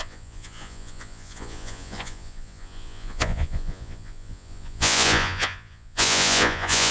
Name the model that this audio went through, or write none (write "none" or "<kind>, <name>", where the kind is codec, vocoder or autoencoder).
vocoder, Vocos